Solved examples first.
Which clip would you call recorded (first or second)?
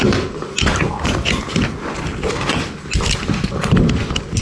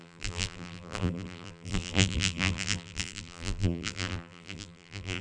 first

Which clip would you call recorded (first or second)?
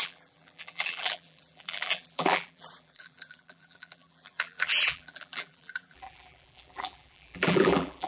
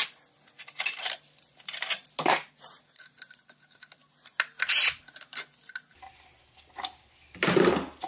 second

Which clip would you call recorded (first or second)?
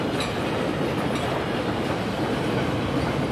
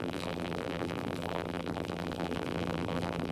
first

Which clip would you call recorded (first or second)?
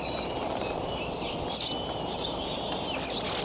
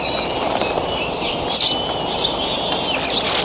second